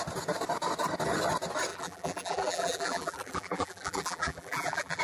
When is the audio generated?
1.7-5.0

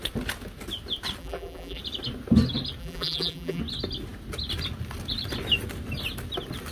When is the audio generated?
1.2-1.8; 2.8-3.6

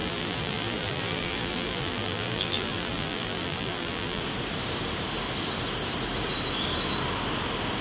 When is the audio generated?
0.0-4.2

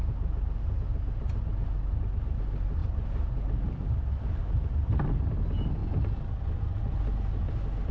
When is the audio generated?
0.9-1.5; 2.8-4.4